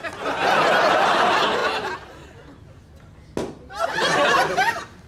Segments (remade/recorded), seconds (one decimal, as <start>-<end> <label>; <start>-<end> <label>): 0.0-5.1 recorded